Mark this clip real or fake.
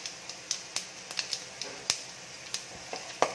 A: real